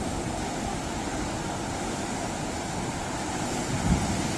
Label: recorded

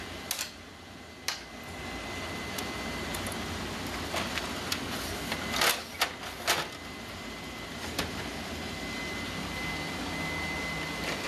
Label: recorded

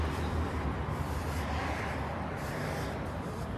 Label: recorded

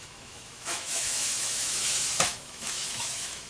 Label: remade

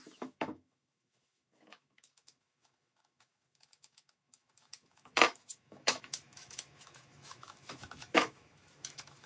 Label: remade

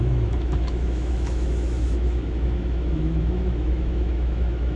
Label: remade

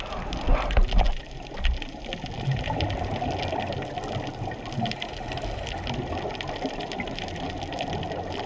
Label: recorded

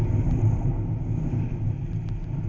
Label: recorded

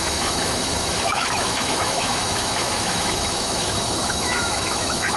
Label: remade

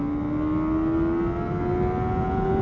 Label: recorded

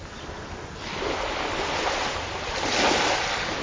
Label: recorded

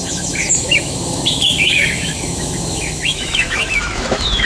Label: remade